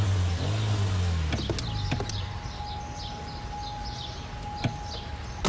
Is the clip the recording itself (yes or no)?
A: yes